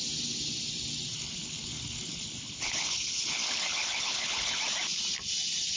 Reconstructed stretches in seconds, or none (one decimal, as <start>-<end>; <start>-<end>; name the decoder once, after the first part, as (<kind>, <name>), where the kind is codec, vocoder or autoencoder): 1.1-4.6 (codec, HILCodec)